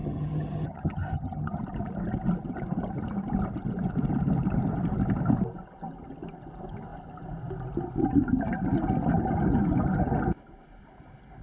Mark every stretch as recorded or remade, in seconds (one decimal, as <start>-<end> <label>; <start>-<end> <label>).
0.0-1.6 remade; 1.6-11.4 recorded